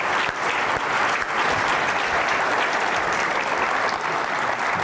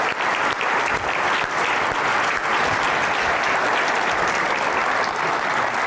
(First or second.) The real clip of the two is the second